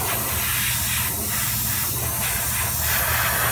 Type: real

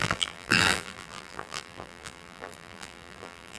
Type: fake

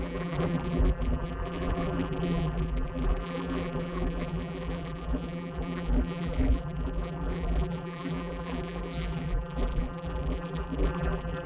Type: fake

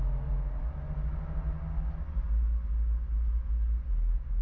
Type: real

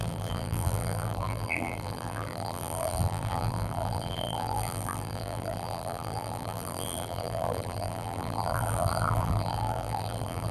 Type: fake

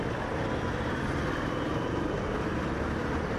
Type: fake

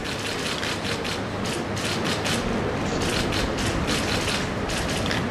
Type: real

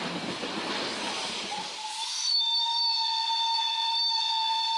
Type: real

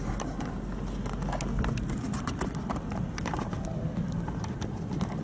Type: real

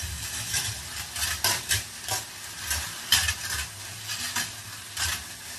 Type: fake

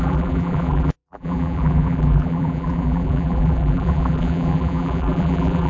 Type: fake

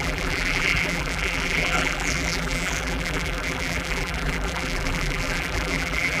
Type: fake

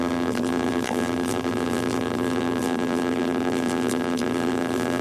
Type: fake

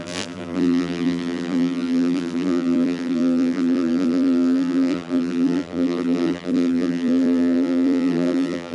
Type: fake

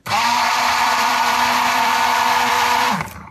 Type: fake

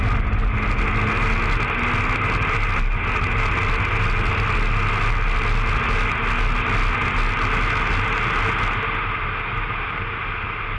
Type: real